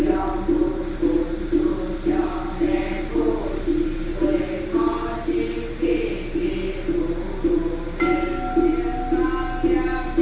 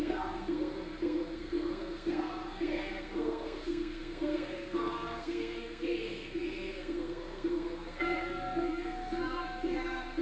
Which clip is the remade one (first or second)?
second